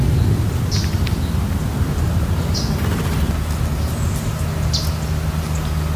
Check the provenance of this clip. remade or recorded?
recorded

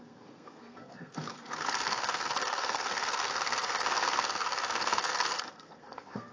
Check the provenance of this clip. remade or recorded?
remade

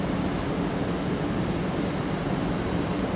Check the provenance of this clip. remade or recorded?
recorded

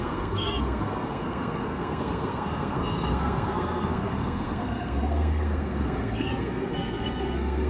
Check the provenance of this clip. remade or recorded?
remade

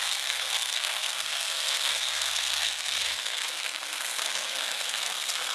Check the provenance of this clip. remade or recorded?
remade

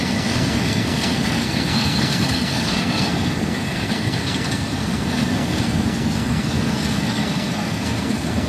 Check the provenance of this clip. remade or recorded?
remade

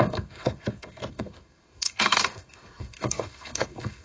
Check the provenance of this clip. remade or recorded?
remade